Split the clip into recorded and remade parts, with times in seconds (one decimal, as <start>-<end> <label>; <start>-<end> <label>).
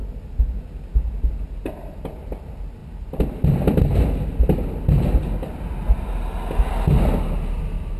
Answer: 0.0-8.0 recorded